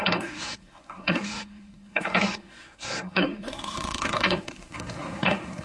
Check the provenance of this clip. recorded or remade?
remade